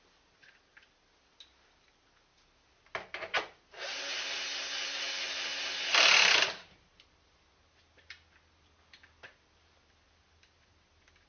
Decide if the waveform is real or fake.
real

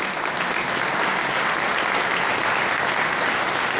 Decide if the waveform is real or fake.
real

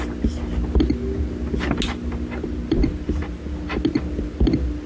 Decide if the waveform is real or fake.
real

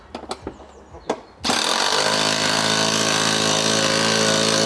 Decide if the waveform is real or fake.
real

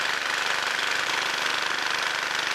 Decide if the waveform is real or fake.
fake